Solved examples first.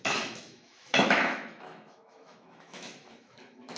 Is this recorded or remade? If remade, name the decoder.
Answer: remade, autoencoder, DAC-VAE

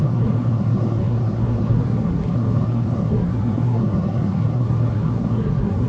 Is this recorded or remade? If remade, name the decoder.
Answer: remade, codec, SNAC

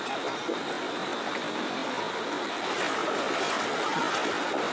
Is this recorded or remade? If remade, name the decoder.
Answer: recorded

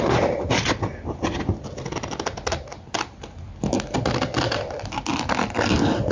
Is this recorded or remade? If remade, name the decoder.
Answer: recorded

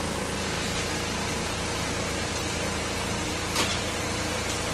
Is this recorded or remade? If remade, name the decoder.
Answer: recorded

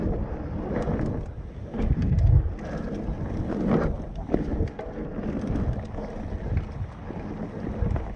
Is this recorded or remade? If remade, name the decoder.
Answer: recorded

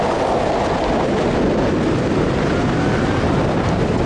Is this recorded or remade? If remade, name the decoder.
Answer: recorded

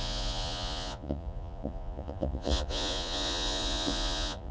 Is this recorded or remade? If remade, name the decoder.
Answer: remade, vocoder, Vocos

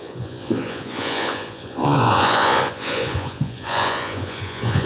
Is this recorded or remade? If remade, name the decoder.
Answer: remade, vocoder, Vocos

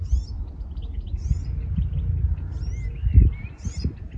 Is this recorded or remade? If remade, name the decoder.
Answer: recorded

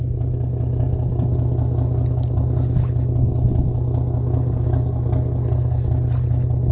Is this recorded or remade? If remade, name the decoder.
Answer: recorded